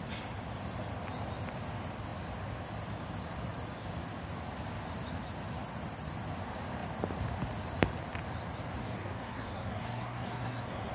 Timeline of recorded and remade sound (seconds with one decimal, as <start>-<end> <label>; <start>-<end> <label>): 0.0-8.8 recorded; 8.8-10.9 remade